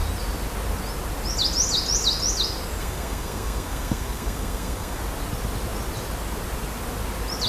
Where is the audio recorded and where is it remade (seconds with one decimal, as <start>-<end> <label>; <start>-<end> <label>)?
0.0-2.8 recorded; 2.8-5.0 remade; 5.0-7.5 recorded